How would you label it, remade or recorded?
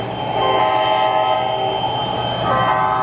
recorded